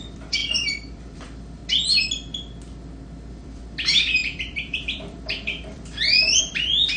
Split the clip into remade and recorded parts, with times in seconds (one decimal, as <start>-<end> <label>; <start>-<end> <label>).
0.0-1.6 remade; 1.6-3.3 recorded; 3.3-7.0 remade